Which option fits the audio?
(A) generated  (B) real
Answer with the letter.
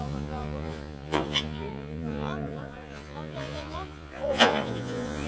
A